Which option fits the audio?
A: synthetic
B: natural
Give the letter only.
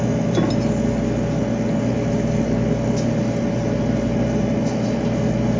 B